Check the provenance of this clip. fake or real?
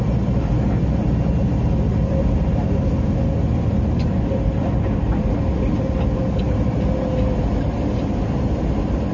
real